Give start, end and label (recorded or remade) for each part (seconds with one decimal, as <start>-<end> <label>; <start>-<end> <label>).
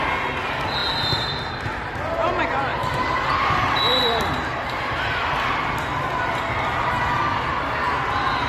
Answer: 0.0-2.7 recorded; 2.7-5.0 remade; 5.0-8.5 recorded